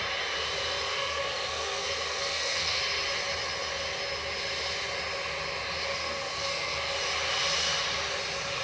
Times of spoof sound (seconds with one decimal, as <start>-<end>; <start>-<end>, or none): 0.9-2.8; 5.9-6.9